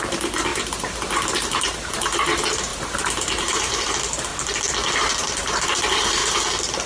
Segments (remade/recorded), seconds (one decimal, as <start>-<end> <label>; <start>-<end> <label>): 0.0-4.3 remade; 4.3-5.0 recorded; 5.0-6.2 remade; 6.2-6.9 recorded